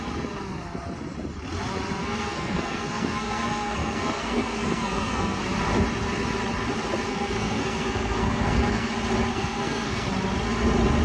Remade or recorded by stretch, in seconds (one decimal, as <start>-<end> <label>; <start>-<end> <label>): 0.0-2.0 recorded; 2.0-5.4 remade; 5.4-7.1 recorded; 7.1-8.9 remade; 8.9-9.3 recorded; 9.3-10.1 remade; 10.1-11.0 recorded